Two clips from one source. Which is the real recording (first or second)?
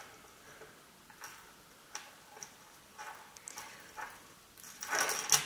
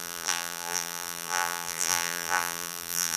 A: first